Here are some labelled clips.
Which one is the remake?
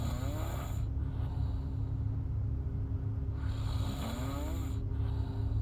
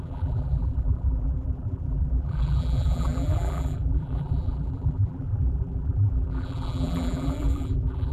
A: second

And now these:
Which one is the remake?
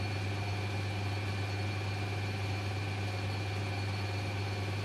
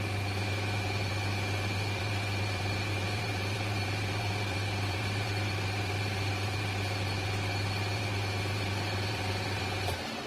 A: second